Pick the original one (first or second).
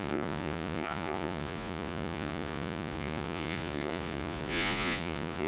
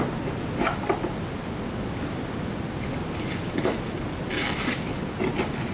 second